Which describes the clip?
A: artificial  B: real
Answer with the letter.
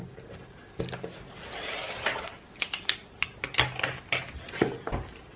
B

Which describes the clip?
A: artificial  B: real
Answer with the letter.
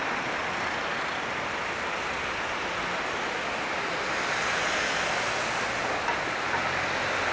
B